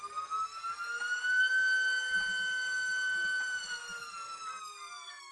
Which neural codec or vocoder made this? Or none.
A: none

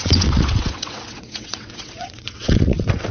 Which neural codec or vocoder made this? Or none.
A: vocoder, WaveNeXt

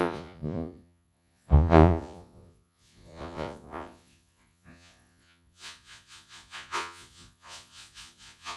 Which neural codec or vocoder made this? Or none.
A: vocoder, Vocos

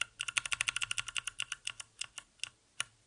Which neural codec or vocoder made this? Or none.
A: none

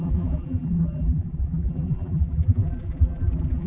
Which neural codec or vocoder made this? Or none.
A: vocoder, BigVGAN v2